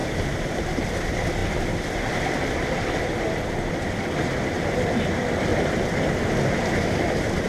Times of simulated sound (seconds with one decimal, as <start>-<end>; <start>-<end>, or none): 0.0-0.9; 5.5-6.1